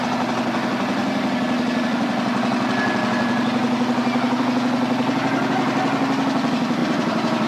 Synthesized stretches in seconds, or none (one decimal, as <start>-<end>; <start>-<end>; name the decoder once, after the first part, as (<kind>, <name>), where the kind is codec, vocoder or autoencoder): 6.8-7.5 (vocoder, BigVGAN v2)